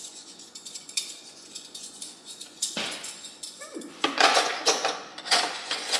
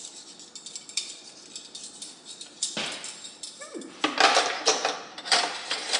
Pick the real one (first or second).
second